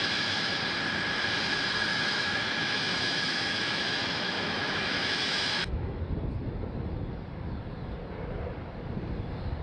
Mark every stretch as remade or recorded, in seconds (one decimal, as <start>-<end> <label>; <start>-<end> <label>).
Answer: 0.0-0.6 remade; 0.6-1.9 recorded; 1.9-6.0 remade; 6.0-9.6 recorded